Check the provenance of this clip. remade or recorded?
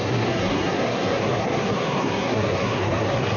remade